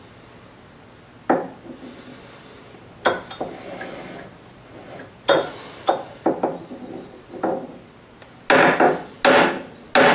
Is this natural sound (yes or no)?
yes